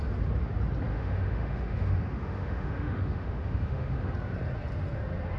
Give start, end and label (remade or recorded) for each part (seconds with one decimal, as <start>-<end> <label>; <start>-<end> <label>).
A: 0.0-0.9 recorded; 0.9-4.1 remade; 4.1-5.4 recorded